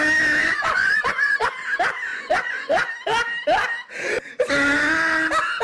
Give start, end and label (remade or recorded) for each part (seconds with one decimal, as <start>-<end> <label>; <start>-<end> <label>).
0.0-0.4 recorded; 0.4-1.5 remade; 1.5-2.1 recorded; 2.1-2.9 remade; 2.9-5.6 recorded